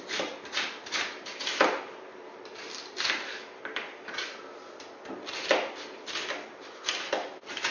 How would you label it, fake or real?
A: real